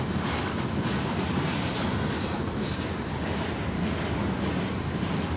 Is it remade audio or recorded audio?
recorded